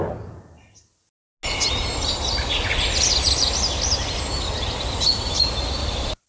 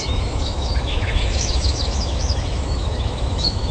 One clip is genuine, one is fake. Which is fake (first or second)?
second